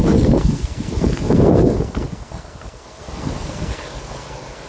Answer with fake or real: fake